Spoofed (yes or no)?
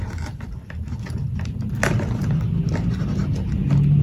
no